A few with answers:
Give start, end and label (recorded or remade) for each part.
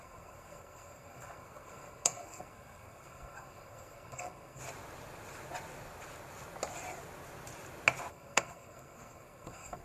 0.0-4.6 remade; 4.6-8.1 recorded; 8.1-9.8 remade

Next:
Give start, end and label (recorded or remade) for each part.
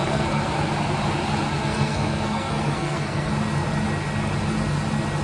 0.0-0.5 remade; 0.5-1.5 recorded; 1.5-3.3 remade; 3.3-5.2 recorded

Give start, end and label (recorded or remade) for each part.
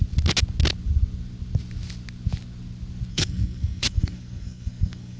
0.0-3.1 recorded; 3.1-5.2 remade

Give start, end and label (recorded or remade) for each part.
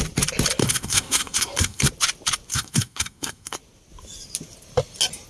0.0-0.6 recorded; 0.6-1.9 remade; 1.9-2.5 recorded; 2.5-3.6 remade; 3.6-5.3 recorded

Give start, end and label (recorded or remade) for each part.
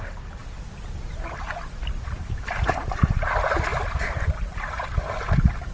0.0-5.7 recorded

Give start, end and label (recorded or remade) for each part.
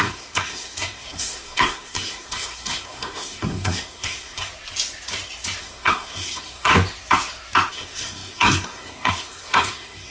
0.0-4.5 remade; 4.5-5.6 recorded; 5.6-6.7 remade; 6.7-7.7 recorded; 7.7-10.1 remade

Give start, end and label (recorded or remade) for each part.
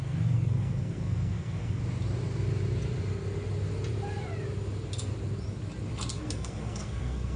0.0-1.8 remade; 1.8-6.2 recorded; 6.2-7.4 remade